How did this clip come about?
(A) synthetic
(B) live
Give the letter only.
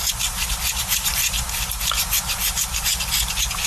B